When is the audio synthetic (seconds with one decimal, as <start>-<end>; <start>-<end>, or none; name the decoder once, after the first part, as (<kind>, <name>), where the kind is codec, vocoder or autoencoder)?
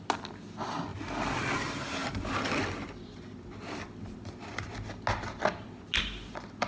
none